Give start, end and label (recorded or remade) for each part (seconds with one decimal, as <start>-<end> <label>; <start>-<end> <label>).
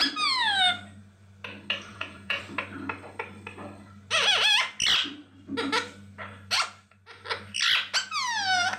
0.0-1.9 recorded; 1.9-2.4 remade; 2.4-8.8 recorded